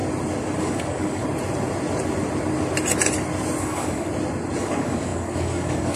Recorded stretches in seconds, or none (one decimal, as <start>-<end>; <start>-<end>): 0.0-0.6; 1.2-3.6; 4.1-4.6